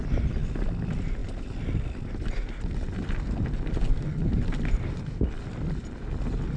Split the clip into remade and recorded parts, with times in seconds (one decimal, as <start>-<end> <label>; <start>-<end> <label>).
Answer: 0.0-6.6 recorded